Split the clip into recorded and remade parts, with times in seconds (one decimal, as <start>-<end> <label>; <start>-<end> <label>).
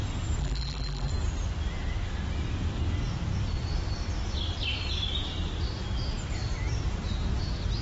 0.0-0.4 recorded; 0.4-1.1 remade; 1.1-7.8 recorded